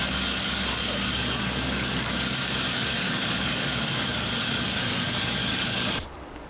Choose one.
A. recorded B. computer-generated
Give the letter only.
B